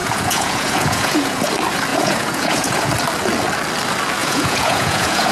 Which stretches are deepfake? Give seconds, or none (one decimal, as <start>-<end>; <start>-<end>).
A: 0.0-1.5; 1.9-2.9; 4.2-5.3